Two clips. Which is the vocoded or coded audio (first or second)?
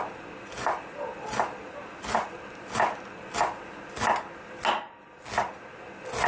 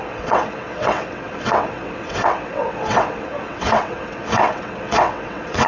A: second